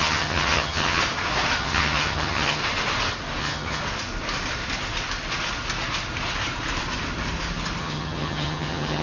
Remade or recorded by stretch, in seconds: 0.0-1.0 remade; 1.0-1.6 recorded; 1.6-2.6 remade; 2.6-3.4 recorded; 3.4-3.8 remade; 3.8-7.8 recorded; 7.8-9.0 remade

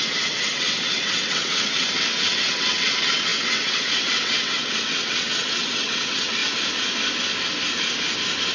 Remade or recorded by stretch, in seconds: 0.0-6.4 remade; 6.4-8.5 recorded

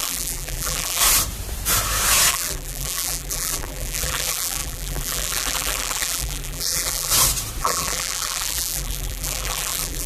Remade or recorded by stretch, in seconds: 0.0-1.0 remade; 1.0-2.3 recorded; 2.3-7.1 remade; 7.1-7.6 recorded; 7.6-10.1 remade

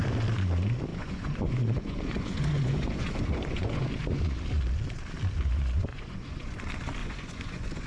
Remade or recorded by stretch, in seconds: 0.0-0.9 recorded; 0.9-4.2 remade; 4.2-5.9 recorded; 5.9-6.6 remade; 6.6-7.0 recorded; 7.0-7.9 remade

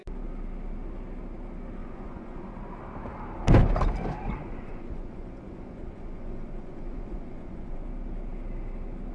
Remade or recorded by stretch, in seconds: 0.0-1.8 recorded; 1.8-2.5 remade; 2.5-4.4 recorded; 4.4-7.8 remade; 7.8-9.1 recorded